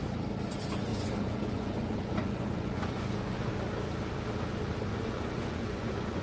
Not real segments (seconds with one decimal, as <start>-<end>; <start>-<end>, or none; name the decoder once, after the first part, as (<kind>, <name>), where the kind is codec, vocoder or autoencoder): 0.9-3.5 (vocoder, Vocos); 4.9-6.2